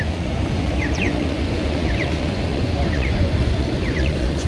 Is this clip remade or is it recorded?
remade